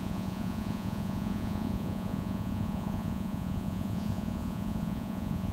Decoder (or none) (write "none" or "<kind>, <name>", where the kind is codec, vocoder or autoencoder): vocoder, Vocos